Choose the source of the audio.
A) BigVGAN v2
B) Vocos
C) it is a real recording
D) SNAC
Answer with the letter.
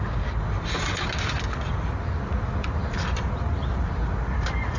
C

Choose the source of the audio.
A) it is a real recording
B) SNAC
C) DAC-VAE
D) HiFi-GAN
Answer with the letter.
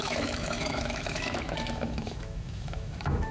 C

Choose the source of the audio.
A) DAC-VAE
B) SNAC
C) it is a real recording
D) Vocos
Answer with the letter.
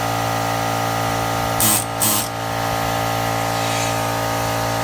C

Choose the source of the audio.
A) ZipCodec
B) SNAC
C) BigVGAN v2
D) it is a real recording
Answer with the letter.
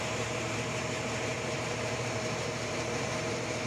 C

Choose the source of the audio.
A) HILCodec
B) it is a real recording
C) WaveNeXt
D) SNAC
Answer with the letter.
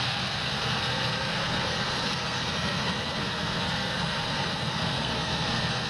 D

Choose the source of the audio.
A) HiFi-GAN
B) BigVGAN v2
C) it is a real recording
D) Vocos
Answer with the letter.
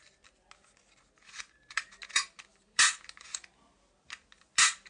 C